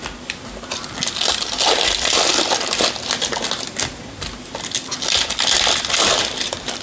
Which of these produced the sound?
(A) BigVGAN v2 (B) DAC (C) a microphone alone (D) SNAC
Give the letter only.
C